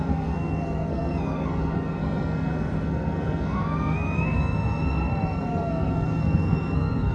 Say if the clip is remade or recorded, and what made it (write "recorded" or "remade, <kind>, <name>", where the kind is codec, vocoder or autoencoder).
remade, codec, SNAC